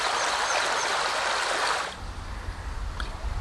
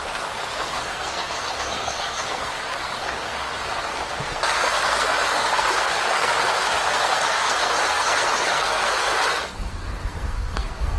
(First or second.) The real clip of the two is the first